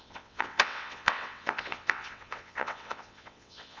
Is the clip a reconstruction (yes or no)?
yes